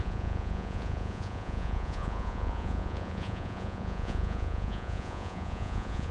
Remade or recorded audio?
remade